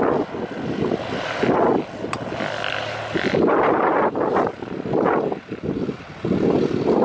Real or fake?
real